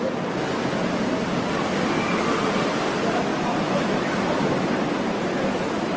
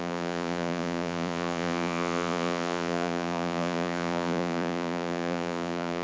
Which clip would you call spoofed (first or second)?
second